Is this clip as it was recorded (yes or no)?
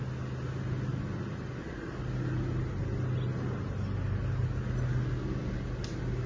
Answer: yes